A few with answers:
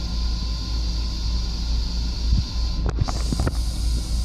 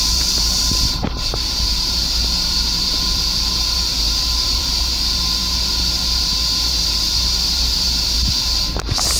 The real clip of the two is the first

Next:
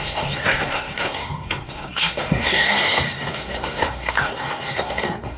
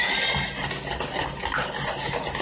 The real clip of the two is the second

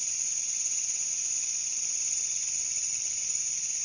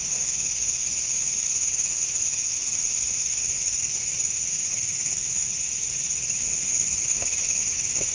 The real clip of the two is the first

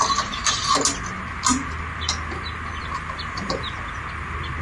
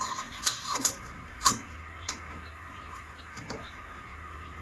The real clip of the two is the first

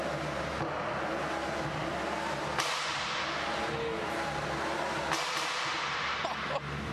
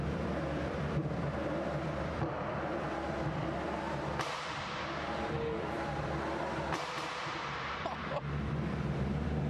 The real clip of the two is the first